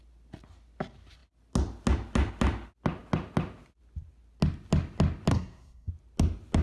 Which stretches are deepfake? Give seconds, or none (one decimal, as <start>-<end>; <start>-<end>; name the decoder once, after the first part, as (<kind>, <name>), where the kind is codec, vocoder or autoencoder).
5.3-5.9 (codec, SNAC)